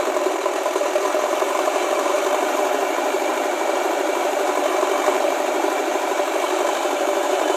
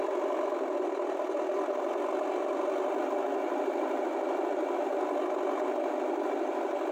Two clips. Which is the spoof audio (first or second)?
first